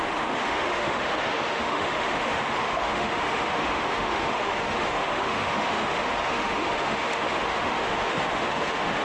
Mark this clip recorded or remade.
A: remade